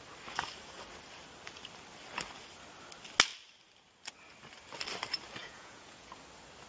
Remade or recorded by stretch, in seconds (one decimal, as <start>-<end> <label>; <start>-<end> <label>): 0.0-5.4 recorded; 5.4-6.1 remade; 6.1-6.7 recorded